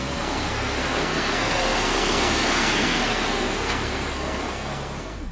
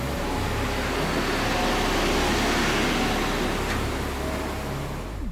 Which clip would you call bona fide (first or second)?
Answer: second